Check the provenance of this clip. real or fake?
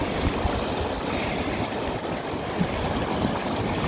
real